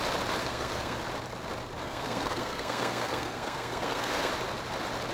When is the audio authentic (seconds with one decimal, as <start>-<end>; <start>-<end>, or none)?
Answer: 0.0-0.4; 1.0-1.8; 4.3-5.1